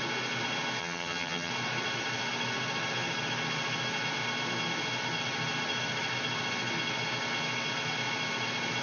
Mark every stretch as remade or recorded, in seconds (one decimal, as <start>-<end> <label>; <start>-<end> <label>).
0.0-0.8 recorded; 0.8-1.5 remade; 1.5-8.8 recorded

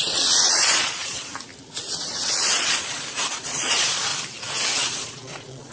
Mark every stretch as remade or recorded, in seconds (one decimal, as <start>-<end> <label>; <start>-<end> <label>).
0.0-1.3 remade; 1.3-1.8 recorded; 1.8-4.1 remade; 4.1-4.9 recorded; 4.9-5.7 remade

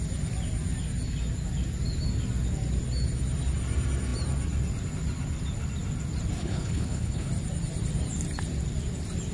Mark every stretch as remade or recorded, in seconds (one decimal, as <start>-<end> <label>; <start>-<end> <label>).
0.0-6.4 recorded; 6.4-7.3 remade; 7.3-9.3 recorded

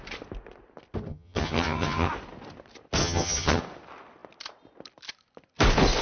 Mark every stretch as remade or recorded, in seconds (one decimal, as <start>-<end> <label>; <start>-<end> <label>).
0.0-1.1 recorded; 1.1-2.1 remade; 2.1-3.0 recorded; 3.0-3.6 remade; 3.6-6.0 recorded

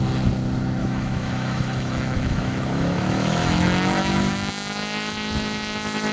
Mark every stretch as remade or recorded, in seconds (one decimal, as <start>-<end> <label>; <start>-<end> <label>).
0.0-0.8 recorded; 0.8-4.5 remade; 4.5-6.1 recorded